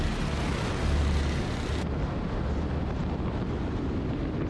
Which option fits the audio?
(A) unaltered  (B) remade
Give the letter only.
A